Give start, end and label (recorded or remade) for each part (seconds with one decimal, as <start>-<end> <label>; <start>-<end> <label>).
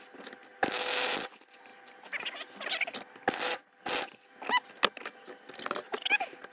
0.0-6.5 recorded